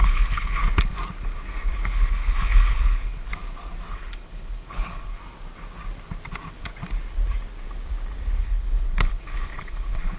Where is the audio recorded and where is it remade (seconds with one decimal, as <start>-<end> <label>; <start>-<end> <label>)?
0.0-0.6 remade; 0.6-1.7 recorded; 1.7-3.3 remade; 3.3-3.9 recorded; 3.9-5.2 remade; 5.2-8.4 recorded; 8.4-10.2 remade